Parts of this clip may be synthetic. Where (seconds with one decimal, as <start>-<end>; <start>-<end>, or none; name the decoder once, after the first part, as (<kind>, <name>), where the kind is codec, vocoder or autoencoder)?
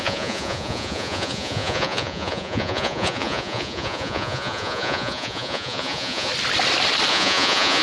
0.0-6.3 (vocoder, Vocos); 7.1-7.8